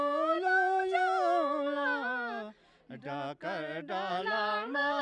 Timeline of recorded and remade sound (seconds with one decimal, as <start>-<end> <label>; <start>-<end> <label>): 0.0-4.1 recorded; 4.1-5.0 remade